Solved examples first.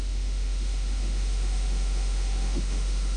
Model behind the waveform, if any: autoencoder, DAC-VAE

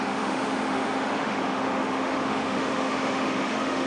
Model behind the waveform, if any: autoencoder, DAC-VAE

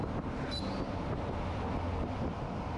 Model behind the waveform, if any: none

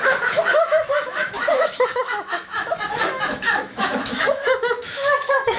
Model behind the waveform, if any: autoencoder, DAC-VAE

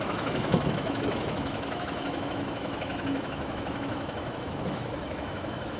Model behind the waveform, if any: autoencoder, DAC-VAE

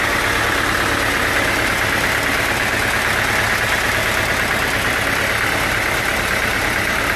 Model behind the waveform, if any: none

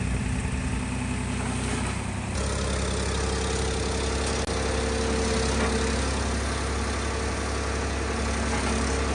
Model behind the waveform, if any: none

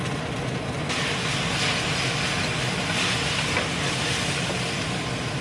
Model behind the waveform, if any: none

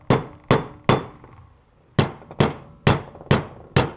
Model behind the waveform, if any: none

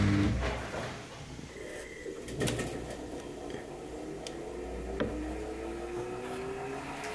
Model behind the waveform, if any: none